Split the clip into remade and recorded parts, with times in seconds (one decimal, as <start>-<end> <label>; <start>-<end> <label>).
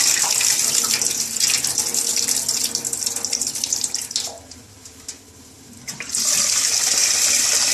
0.0-7.0 recorded; 7.0-7.7 remade